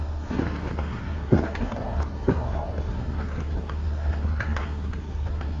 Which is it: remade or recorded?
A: remade